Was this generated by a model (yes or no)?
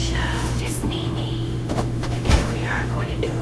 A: yes